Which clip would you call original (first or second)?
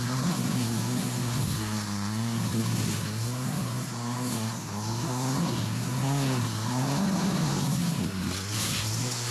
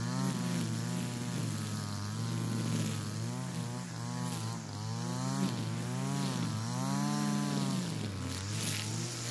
second